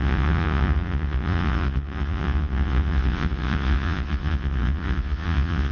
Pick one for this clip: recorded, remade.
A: remade